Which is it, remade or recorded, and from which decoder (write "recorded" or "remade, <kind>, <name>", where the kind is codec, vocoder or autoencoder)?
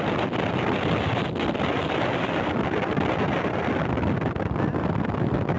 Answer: recorded